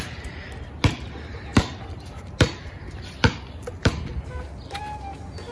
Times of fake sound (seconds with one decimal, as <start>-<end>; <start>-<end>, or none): 1.5-4.8